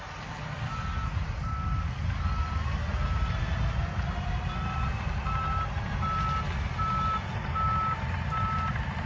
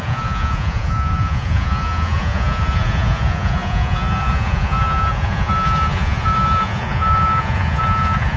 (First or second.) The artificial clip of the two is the second